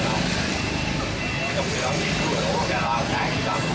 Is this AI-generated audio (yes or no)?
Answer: no